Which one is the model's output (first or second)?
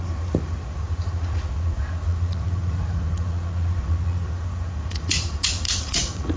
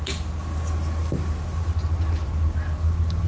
first